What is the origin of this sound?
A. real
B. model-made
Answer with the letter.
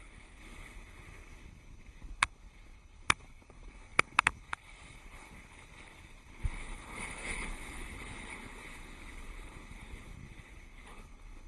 B